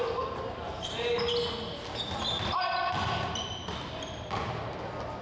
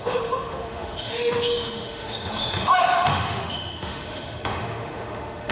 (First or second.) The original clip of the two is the first